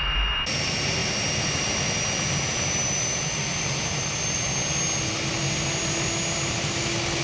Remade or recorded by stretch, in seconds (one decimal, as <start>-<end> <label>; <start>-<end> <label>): 0.0-7.2 recorded